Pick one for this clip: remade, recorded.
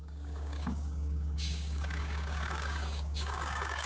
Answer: remade